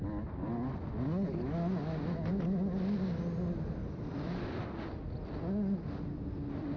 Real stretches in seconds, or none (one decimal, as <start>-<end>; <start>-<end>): 0.0-6.8

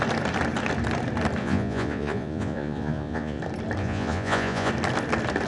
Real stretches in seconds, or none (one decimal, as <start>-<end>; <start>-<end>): 0.0-1.4; 3.4-3.8; 4.7-5.5

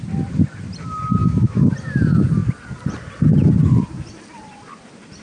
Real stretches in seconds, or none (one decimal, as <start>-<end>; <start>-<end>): 0.0-1.2; 1.7-5.2

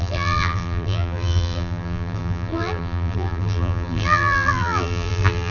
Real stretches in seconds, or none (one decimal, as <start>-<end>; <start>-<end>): none

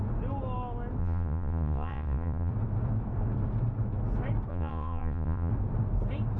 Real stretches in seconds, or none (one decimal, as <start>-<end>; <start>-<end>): 0.0-1.0; 2.5-4.5; 5.5-6.4

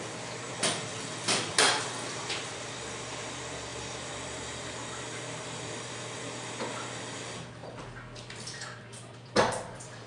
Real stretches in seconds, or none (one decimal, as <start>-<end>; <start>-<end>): 7.6-8.3

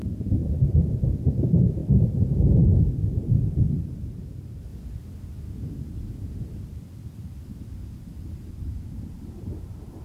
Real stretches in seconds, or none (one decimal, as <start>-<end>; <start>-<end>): 1.8-2.4; 4.7-8.5

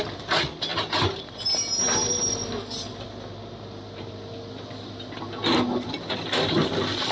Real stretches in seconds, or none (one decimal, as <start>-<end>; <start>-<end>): 0.0-7.1